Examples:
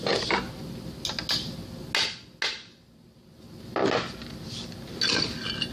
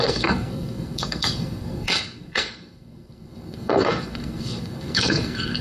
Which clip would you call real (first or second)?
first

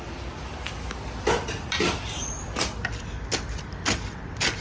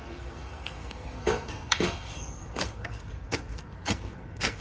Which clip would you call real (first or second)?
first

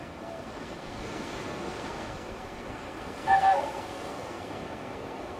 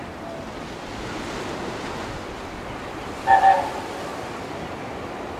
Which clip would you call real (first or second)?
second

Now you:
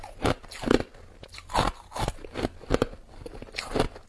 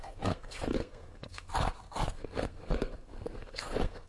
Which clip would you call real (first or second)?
first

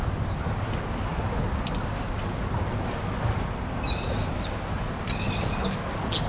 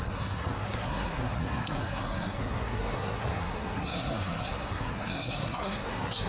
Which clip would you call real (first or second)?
first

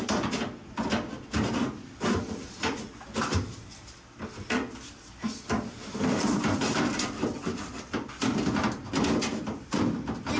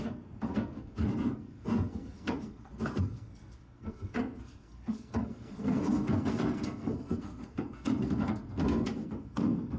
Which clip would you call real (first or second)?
first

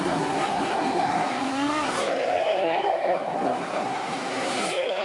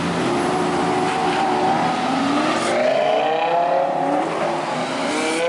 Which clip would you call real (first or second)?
second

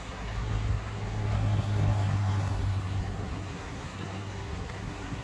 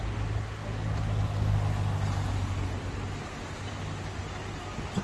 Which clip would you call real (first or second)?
second